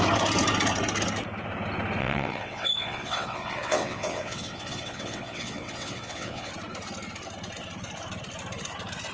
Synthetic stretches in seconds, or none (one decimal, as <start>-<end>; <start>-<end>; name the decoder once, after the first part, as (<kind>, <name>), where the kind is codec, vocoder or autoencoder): 2.0-6.5 (vocoder, WaveNeXt)